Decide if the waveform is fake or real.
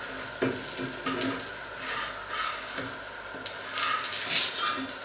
real